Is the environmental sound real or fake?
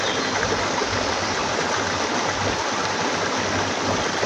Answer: real